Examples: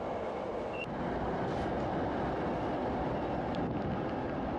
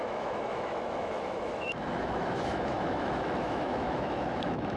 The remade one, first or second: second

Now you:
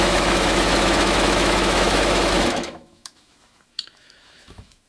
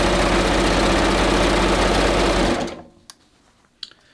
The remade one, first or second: first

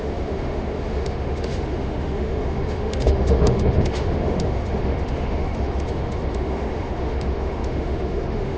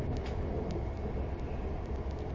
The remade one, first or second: first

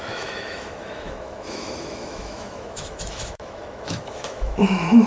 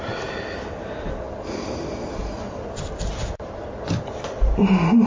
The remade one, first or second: first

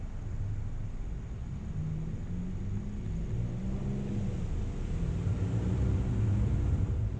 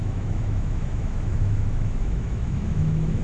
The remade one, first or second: second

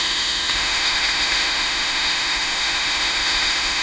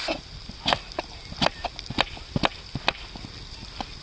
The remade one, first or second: first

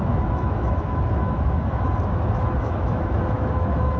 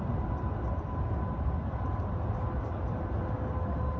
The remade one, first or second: first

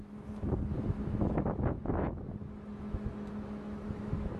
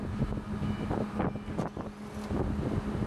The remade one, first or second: first